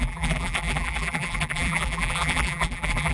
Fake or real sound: fake